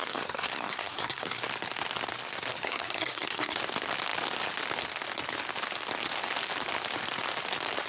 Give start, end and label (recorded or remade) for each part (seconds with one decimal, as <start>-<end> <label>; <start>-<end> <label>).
0.0-1.4 remade; 1.4-2.5 recorded; 2.5-3.6 remade; 3.6-7.9 recorded